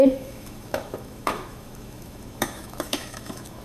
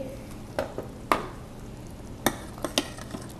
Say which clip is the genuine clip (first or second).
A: second